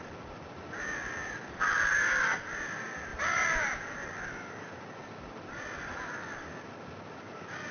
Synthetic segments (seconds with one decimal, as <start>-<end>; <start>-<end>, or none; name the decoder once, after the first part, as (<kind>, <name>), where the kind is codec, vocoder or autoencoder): 3.1-3.6 (vocoder, BigVGAN v2)